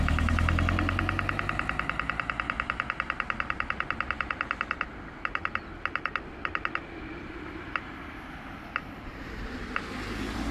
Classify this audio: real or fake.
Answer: real